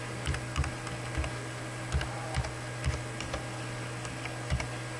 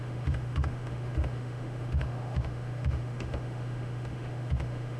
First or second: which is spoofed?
second